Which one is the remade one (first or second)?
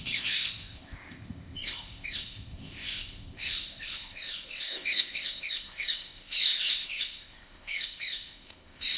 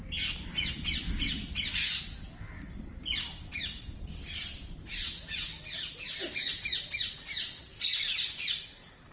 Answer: first